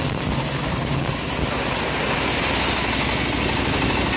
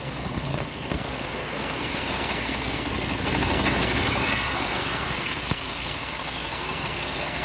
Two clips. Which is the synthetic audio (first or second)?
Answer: second